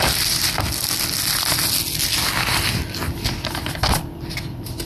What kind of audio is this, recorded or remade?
recorded